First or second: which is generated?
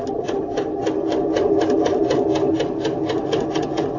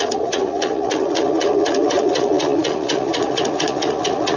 second